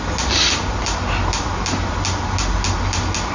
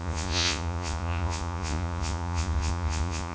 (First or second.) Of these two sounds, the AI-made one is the second